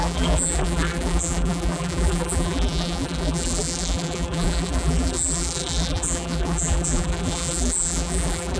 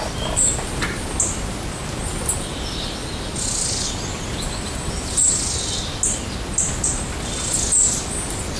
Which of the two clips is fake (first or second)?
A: first